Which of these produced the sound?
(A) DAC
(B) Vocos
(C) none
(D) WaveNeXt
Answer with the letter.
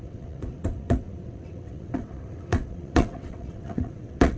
D